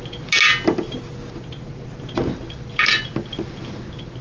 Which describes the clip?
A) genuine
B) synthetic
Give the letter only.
A